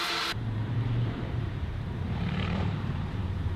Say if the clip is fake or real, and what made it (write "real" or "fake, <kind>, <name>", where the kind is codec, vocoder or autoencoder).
fake, vocoder, BigVGAN v2